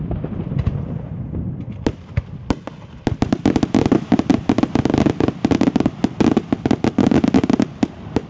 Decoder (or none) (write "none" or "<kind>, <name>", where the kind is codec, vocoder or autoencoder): none